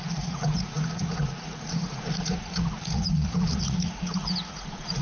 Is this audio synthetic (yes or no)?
yes